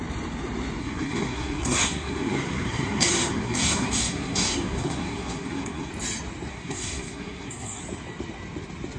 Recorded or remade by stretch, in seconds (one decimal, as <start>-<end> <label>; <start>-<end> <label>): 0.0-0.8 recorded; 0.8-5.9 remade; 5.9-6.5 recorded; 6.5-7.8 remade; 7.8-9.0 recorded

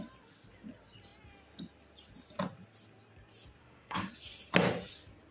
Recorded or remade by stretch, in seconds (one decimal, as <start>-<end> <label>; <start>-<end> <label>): 0.0-3.6 recorded; 3.6-4.1 remade; 4.1-5.3 recorded

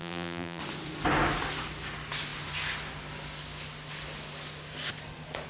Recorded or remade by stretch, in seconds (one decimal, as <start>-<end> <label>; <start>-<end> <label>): 0.0-0.6 remade; 0.6-5.5 recorded

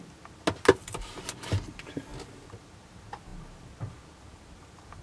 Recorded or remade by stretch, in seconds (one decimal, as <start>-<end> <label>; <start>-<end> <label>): 0.0-5.0 recorded